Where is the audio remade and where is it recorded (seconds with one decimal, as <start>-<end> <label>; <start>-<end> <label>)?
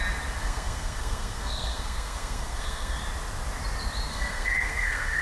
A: 0.0-0.4 recorded; 0.4-3.0 remade; 3.0-4.1 recorded; 4.1-5.2 remade